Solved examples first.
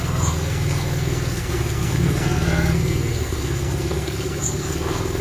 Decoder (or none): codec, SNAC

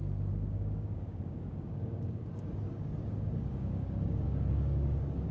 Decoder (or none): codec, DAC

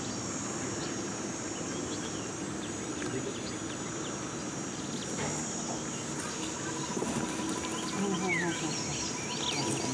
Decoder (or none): none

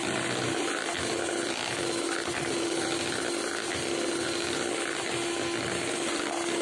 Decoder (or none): none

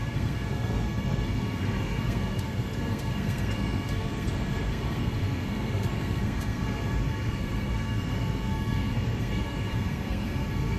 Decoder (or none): codec, SNAC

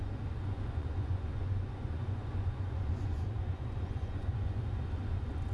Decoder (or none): vocoder, Vocos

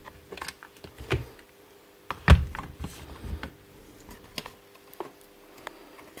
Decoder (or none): none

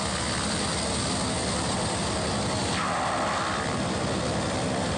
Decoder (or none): none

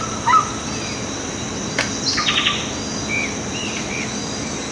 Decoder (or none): none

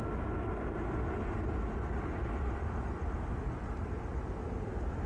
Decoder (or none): none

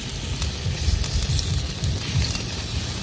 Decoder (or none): none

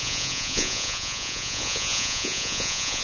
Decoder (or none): vocoder, Vocos